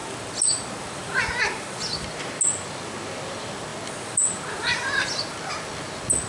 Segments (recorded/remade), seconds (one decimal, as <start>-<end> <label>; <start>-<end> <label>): 0.0-6.3 recorded